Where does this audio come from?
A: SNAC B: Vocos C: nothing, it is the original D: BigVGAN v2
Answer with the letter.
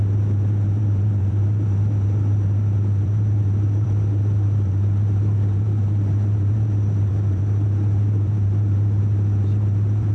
D